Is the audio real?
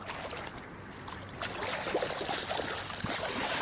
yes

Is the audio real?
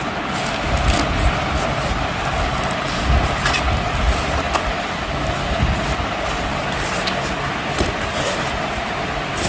yes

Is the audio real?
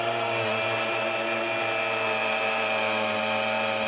yes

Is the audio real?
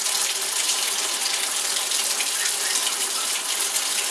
no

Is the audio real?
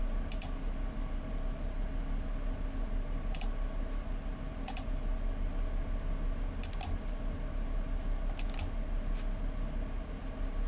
yes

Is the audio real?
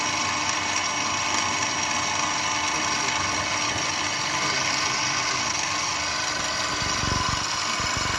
yes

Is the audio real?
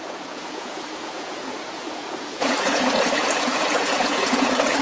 no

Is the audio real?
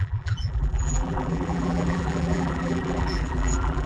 no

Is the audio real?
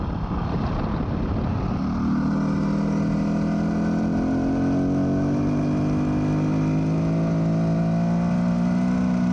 yes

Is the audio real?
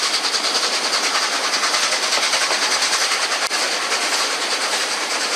yes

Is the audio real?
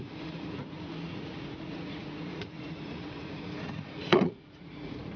no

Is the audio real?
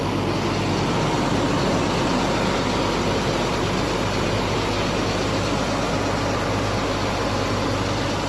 yes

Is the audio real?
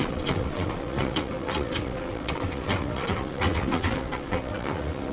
no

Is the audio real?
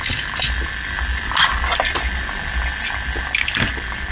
yes